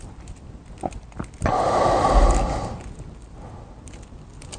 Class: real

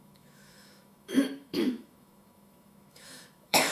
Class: fake